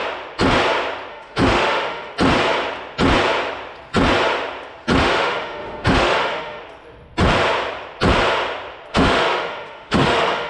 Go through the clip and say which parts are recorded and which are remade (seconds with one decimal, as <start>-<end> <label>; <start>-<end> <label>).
0.0-1.1 recorded; 1.1-2.1 remade; 2.1-5.0 recorded; 5.0-6.6 remade; 6.6-8.9 recorded; 8.9-10.5 remade